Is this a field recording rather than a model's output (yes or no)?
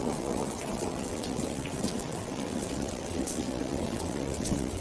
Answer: no